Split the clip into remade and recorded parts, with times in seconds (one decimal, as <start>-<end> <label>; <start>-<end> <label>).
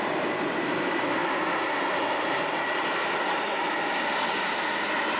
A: 0.0-5.2 recorded